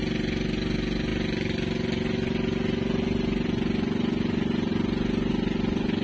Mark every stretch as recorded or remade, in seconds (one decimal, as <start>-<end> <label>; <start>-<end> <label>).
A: 0.0-6.0 recorded